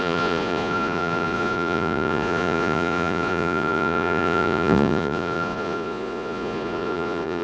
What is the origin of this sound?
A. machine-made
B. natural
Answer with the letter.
A